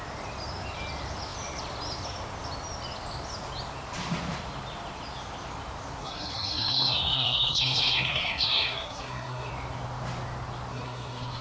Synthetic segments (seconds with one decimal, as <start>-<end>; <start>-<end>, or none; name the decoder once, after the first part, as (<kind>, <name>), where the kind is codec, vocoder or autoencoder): 6.0-9.5 (codec, SNAC); 10.7-11.4